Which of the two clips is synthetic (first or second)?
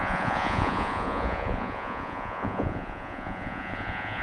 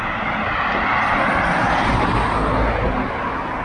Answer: first